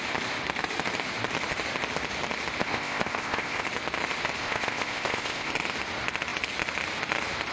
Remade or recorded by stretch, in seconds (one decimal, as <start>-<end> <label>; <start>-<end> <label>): 0.0-2.6 recorded; 2.6-3.6 remade; 3.6-4.4 recorded; 4.4-5.5 remade; 5.5-7.5 recorded